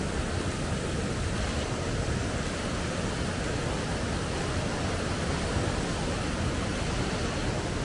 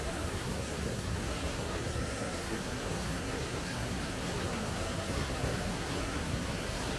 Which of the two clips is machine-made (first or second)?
second